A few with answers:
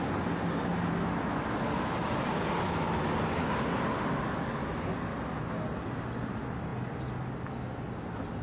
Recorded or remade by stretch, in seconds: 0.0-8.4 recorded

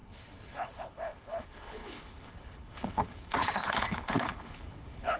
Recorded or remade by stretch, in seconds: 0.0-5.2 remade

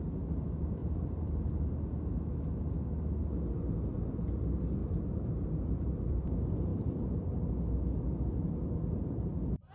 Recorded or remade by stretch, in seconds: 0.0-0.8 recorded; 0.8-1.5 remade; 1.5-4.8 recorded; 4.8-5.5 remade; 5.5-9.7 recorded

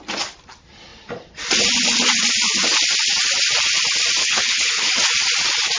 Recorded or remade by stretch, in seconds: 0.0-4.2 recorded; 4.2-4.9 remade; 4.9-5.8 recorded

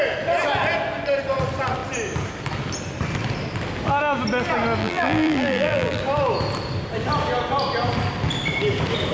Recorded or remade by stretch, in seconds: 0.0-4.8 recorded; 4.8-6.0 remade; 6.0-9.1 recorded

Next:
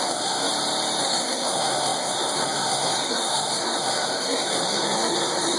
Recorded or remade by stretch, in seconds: 0.0-0.5 remade; 0.5-1.0 recorded; 1.0-5.6 remade